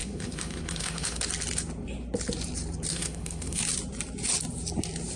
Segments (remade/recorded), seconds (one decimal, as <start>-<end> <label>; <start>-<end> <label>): 0.0-1.2 remade; 1.2-2.9 recorded; 2.9-3.6 remade; 3.6-5.2 recorded